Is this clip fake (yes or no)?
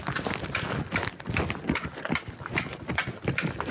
no